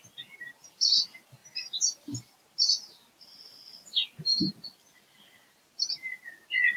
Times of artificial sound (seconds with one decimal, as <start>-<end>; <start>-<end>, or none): 5.4-6.2